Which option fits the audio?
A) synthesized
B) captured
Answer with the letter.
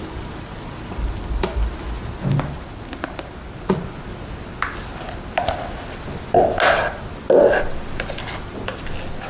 B